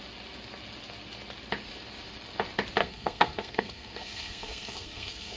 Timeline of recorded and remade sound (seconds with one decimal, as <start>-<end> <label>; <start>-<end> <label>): 0.0-2.8 recorded; 2.8-5.4 remade